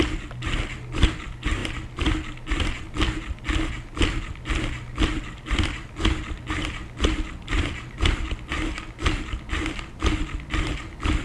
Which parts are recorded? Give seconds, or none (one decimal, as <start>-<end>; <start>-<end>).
0.0-11.2